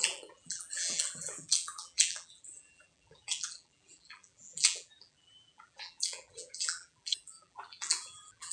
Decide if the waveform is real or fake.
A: fake